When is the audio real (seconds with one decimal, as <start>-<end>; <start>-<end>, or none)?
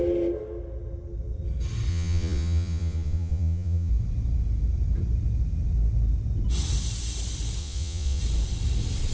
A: 0.0-1.9; 3.9-7.6; 8.2-9.1